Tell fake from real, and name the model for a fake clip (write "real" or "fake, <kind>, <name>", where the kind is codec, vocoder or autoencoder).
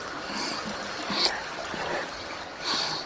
real